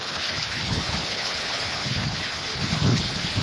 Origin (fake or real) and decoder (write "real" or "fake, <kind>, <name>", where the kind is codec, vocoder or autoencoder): fake, codec, HILCodec